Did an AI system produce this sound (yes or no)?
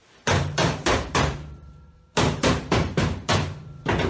yes